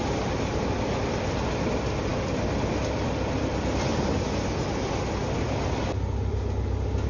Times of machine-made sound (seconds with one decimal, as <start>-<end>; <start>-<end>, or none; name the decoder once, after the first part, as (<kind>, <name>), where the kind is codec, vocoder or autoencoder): none